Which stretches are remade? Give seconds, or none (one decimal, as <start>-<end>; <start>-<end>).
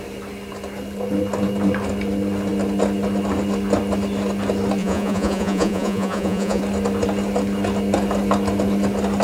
4.8-6.6